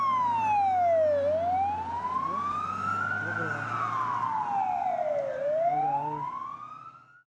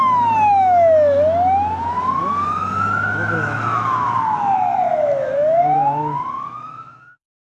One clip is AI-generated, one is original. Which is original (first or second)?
first